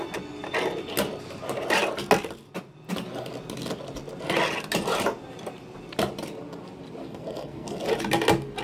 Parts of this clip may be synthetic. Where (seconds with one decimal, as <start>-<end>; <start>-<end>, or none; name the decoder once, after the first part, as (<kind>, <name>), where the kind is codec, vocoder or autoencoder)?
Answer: 7.0-7.8 (codec, SNAC)